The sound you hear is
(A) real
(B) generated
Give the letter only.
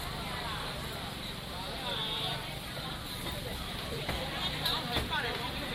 B